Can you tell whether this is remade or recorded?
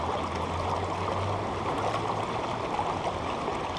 recorded